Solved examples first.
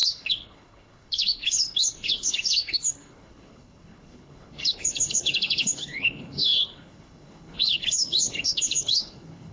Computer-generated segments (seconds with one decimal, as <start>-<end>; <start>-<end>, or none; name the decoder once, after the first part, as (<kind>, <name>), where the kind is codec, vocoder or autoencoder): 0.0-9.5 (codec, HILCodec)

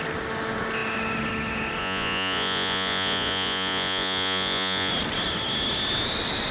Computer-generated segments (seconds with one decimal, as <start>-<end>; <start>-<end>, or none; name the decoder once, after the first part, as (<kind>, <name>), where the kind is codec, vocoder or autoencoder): 1.8-4.9 (vocoder, Vocos)

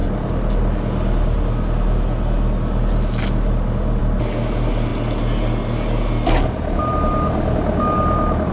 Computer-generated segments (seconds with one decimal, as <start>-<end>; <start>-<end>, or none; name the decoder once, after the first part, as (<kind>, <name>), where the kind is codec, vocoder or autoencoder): none

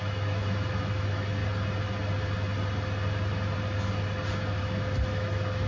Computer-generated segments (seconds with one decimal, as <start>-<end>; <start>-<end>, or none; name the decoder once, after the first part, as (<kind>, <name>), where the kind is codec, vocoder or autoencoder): 0.0-1.4 (autoencoder, DAC-VAE); 4.6-5.7